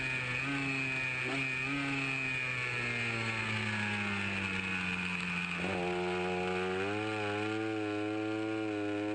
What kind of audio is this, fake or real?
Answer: real